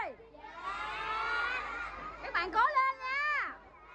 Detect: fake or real real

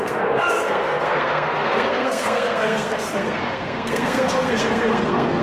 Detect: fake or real fake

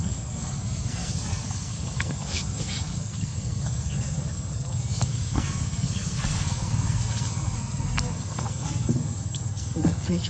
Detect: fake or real fake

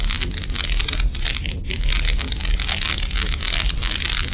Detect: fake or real real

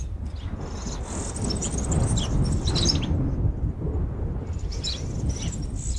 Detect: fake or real real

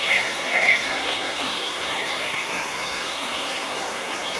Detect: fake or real fake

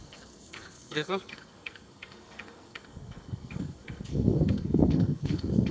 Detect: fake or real fake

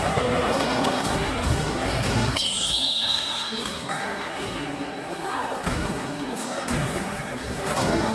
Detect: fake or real fake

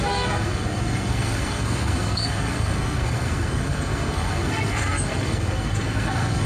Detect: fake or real fake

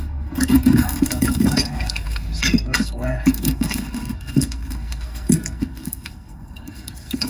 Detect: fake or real fake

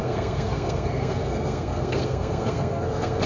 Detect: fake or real fake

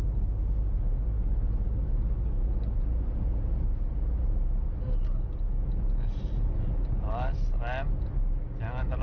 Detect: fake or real real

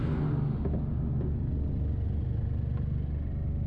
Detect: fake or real real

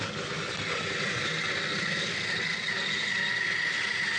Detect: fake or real real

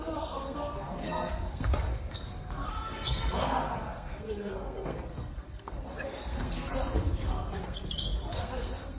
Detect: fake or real fake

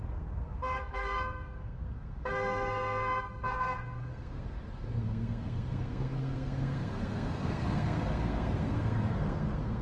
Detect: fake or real fake